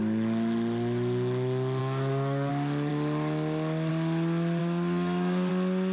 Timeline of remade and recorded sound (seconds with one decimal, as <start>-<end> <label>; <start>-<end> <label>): 0.0-1.8 recorded; 1.8-2.5 remade; 2.5-4.6 recorded; 4.6-5.5 remade; 5.5-5.9 recorded